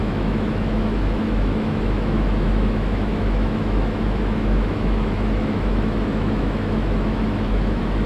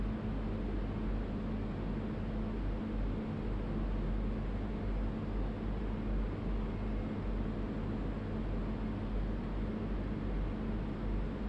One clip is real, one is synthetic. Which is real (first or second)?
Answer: second